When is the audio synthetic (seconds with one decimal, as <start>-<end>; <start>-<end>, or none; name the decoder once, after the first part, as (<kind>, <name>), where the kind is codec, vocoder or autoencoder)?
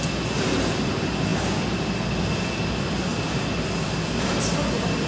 none